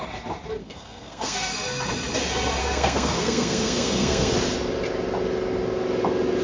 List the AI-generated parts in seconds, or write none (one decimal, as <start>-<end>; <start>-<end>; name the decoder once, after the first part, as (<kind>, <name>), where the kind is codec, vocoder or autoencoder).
0.6-1.5 (codec, SNAC); 2.6-4.3